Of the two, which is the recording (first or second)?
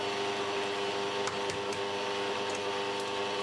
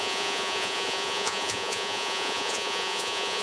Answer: first